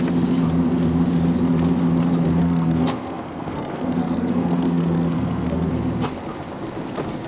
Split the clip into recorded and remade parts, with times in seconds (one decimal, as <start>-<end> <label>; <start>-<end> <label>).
0.0-2.4 recorded; 2.4-5.7 remade; 5.7-7.3 recorded